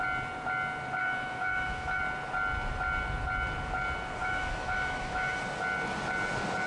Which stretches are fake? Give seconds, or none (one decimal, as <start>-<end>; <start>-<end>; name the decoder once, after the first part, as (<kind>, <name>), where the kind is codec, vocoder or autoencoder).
1.0-2.0 (autoencoder, DAC-VAE); 4.2-5.4